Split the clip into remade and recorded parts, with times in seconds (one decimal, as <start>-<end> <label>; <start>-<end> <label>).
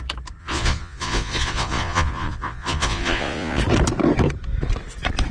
0.0-0.4 recorded; 0.4-3.6 remade; 3.6-5.3 recorded